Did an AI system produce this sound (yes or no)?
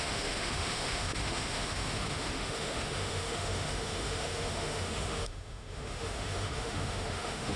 yes